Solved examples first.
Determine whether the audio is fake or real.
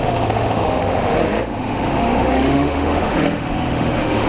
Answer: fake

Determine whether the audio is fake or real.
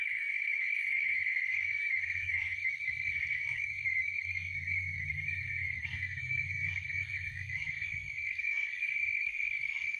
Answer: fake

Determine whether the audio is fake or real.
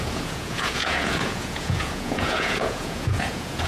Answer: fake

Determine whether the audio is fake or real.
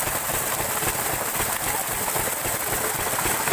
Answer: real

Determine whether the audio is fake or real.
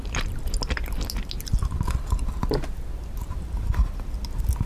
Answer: real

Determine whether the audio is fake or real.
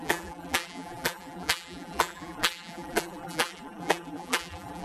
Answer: fake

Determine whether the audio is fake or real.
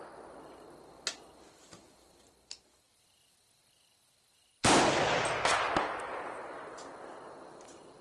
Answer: real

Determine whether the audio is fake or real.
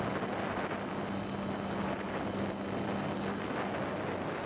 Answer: real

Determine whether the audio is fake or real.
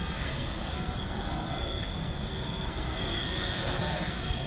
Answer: fake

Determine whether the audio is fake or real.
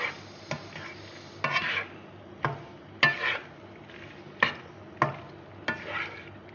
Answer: real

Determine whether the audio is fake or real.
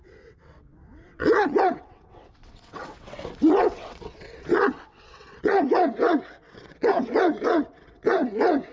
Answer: fake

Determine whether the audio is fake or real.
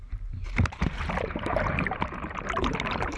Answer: fake